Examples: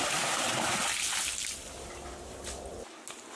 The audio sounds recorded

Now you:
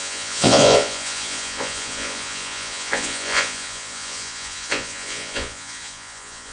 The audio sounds remade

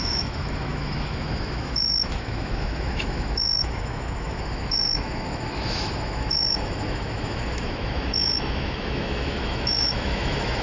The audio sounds remade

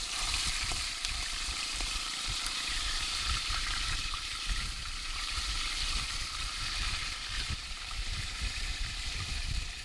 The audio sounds remade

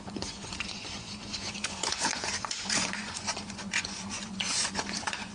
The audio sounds remade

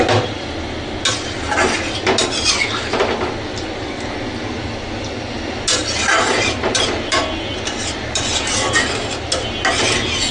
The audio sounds recorded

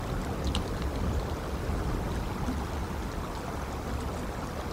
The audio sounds recorded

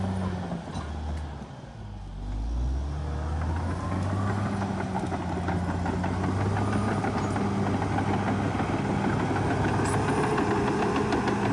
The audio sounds recorded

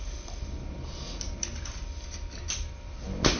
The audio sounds recorded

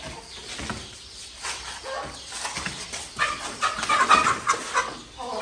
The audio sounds recorded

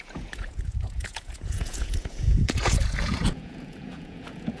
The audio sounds remade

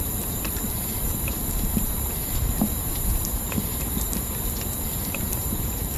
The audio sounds remade